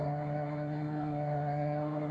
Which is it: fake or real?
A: fake